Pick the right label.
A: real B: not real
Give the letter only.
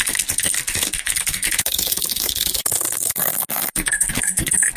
B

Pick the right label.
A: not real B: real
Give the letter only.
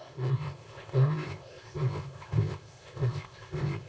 A